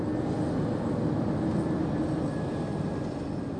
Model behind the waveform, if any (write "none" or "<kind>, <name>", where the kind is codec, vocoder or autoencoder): none